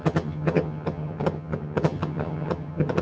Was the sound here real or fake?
fake